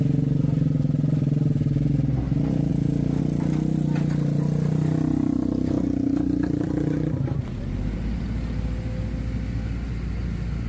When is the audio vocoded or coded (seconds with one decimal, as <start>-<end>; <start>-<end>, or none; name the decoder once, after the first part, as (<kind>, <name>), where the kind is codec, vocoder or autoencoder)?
none